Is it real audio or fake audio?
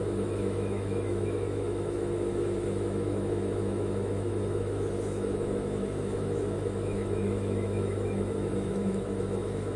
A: fake